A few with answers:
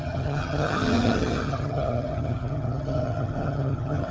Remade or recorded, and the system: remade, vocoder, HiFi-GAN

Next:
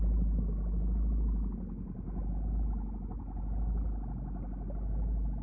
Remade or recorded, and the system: recorded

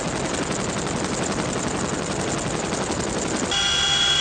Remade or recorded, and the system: recorded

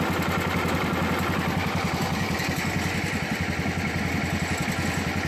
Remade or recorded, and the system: recorded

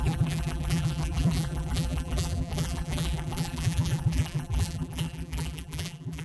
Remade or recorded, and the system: remade, vocoder, BigVGAN v2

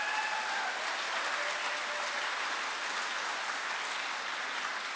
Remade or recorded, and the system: recorded